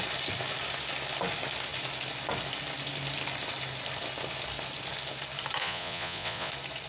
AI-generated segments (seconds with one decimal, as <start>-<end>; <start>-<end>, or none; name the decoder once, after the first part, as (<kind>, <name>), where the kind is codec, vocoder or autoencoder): 5.6-6.5 (vocoder, Vocos)